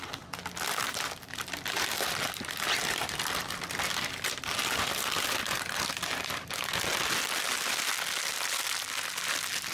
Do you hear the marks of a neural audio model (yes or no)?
no